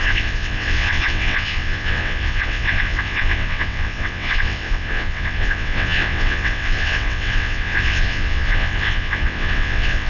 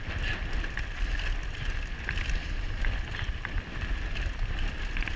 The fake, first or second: first